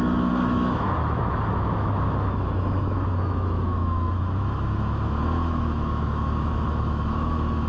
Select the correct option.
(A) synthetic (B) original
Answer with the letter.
A